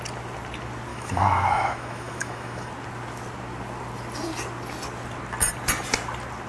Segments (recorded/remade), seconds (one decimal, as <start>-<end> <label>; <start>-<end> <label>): 0.0-0.9 recorded; 0.9-2.7 remade; 2.7-6.5 recorded